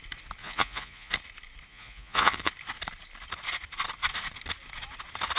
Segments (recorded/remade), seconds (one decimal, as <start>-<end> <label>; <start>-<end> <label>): 0.0-0.4 recorded; 0.4-1.1 remade; 1.1-1.7 recorded; 1.7-2.5 remade; 2.5-5.4 recorded